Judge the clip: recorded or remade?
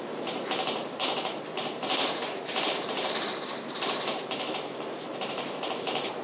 remade